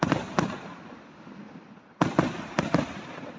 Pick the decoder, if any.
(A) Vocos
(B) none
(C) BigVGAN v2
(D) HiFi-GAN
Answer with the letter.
B